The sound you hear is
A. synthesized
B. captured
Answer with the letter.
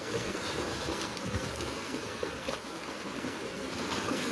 A